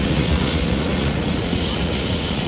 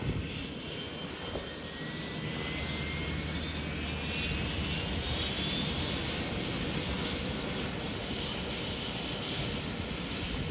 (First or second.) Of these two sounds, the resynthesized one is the first